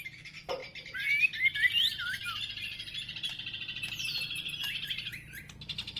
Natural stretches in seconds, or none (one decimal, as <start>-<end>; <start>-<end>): 0.0-0.6; 1.2-6.0